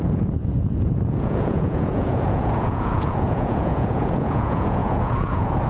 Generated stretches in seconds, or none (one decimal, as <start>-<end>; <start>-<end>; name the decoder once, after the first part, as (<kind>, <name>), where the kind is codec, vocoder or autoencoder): 0.0-5.7 (vocoder, Vocos)